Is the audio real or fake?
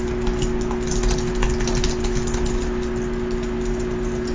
real